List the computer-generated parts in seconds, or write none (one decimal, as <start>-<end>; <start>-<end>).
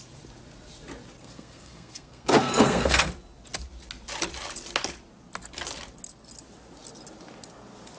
1.2-3.1